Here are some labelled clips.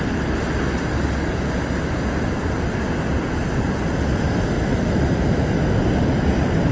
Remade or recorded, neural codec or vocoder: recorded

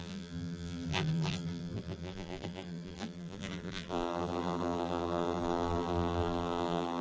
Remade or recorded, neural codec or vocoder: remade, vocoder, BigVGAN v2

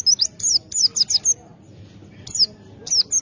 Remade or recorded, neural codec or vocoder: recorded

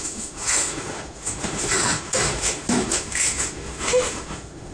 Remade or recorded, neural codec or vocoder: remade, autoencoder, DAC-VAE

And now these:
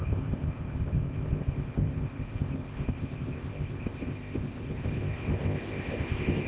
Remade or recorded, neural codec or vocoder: remade, codec, ZipCodec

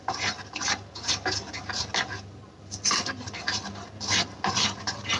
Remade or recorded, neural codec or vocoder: recorded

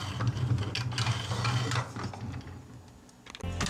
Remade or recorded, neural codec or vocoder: recorded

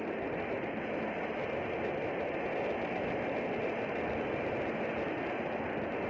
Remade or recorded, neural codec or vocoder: recorded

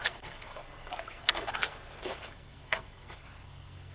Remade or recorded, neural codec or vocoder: remade, codec, SNAC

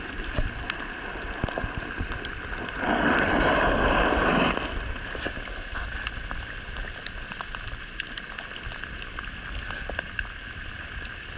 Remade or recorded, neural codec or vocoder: remade, vocoder, BigVGAN v2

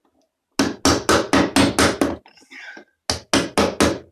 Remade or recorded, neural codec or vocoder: recorded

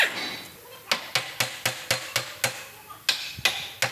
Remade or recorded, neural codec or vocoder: recorded